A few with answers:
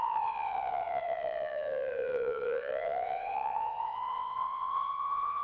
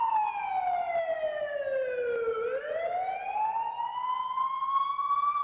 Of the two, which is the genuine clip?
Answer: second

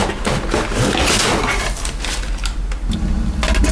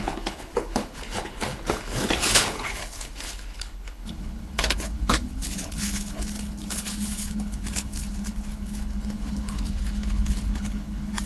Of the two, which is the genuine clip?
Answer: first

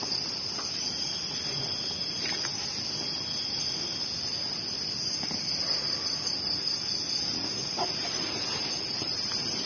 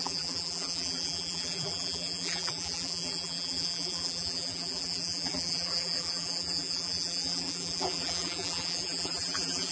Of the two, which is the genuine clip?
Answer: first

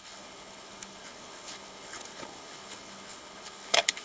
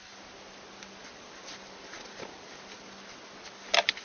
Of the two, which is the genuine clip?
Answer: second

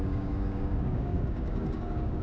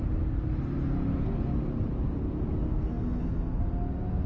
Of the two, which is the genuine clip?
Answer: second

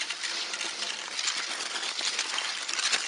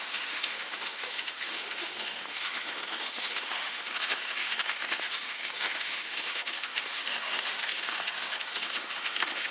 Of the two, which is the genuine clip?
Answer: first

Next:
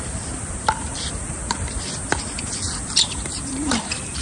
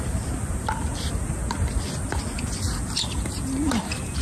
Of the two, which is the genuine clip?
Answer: second